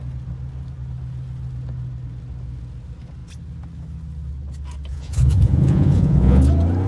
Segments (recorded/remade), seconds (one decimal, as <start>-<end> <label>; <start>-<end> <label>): 0.0-4.9 recorded; 4.9-6.4 remade; 6.4-6.9 recorded